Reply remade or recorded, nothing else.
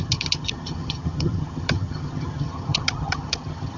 remade